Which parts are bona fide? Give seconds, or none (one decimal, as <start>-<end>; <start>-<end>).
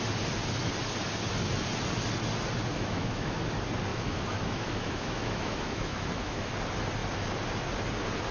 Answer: 0.0-2.7; 3.5-3.9; 6.5-8.3